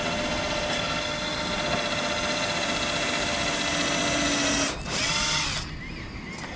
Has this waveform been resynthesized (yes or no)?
no